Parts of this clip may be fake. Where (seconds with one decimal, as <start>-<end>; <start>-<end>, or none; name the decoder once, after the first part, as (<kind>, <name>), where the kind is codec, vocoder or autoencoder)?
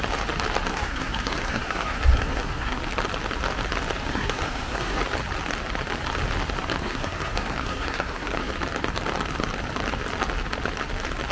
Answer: 0.7-2.8 (codec, SNAC); 4.1-5.0; 6.8-8.5